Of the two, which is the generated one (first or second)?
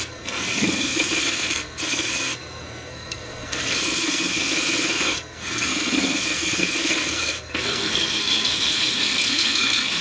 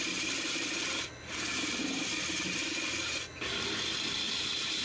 first